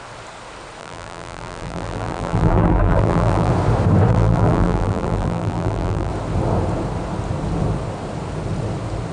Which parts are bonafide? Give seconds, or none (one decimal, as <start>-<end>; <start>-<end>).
0.0-0.8; 3.5-4.1; 6.1-9.1